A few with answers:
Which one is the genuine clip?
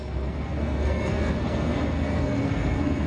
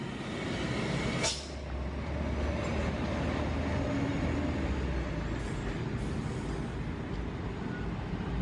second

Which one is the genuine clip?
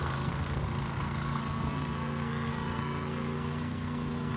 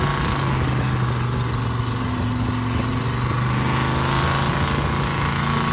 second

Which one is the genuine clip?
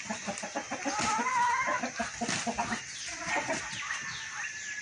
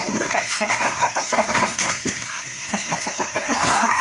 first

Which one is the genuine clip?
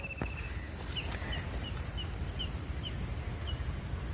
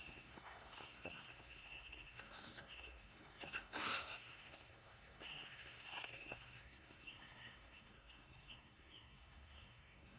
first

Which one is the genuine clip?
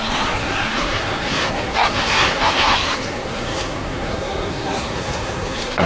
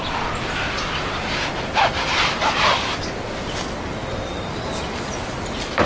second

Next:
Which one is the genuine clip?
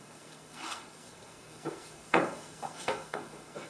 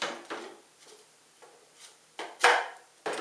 second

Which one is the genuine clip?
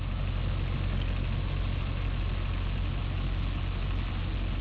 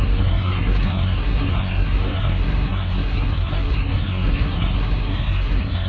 first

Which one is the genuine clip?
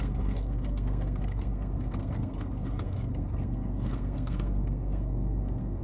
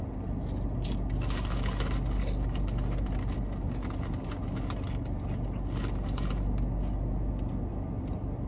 second